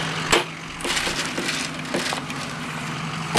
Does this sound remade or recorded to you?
recorded